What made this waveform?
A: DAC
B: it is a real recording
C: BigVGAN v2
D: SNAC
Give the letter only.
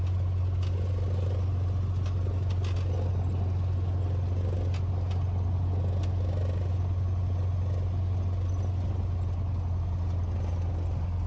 B